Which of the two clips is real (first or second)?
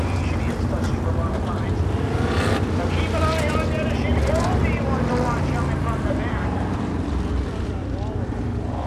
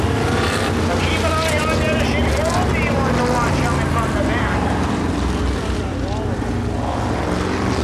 second